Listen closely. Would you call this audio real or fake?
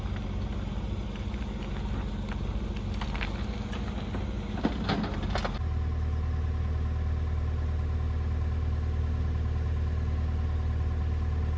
real